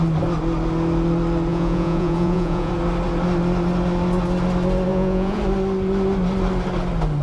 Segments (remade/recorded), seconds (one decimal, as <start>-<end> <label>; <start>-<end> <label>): 0.0-1.5 recorded; 1.5-2.7 remade; 2.7-4.9 recorded; 4.9-5.4 remade; 5.4-7.2 recorded